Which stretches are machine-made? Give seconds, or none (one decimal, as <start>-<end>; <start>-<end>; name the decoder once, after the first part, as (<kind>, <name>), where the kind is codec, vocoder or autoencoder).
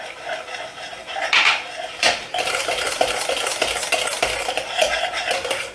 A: 1.0-3.1 (vocoder, BigVGAN v2); 4.4-5.3